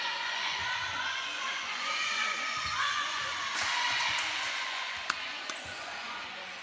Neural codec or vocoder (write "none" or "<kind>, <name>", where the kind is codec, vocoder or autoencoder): vocoder, Vocos